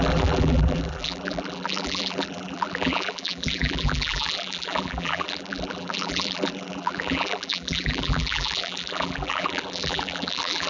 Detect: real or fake fake